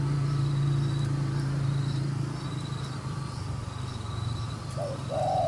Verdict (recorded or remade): recorded